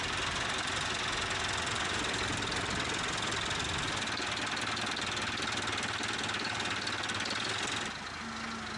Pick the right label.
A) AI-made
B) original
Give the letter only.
B